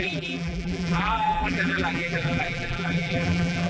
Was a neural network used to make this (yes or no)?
yes